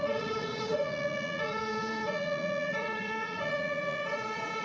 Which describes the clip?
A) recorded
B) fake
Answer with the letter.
B